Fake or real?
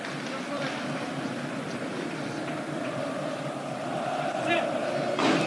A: fake